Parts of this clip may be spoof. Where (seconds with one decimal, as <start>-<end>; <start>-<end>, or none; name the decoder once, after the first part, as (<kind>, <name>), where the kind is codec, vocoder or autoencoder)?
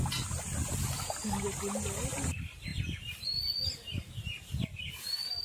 none